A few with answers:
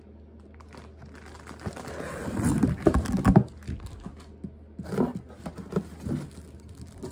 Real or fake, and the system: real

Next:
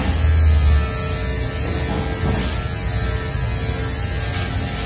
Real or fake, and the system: real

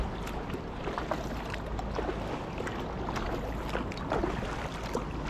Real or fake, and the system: real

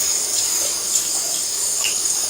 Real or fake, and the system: fake, codec, DAC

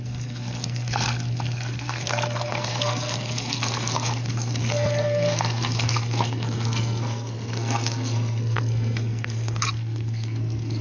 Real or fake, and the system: fake, codec, SNAC